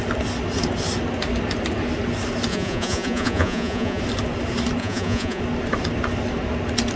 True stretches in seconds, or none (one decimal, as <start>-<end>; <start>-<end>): 0.0-2.5; 4.0-4.8; 5.4-7.0